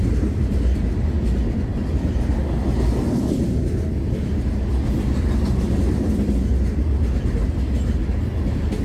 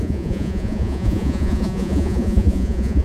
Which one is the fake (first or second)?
second